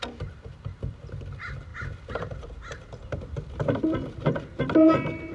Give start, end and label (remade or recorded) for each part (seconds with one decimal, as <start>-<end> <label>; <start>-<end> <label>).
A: 0.0-5.3 recorded